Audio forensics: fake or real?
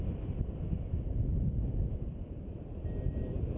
real